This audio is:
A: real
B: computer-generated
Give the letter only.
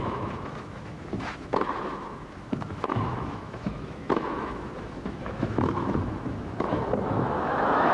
B